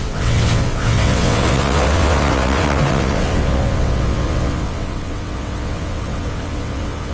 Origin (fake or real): fake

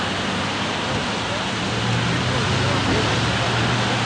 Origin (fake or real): real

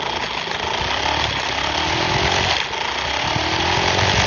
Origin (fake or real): real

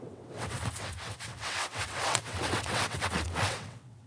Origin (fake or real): fake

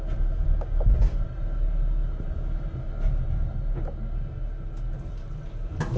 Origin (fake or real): real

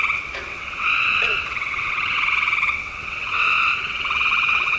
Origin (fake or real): fake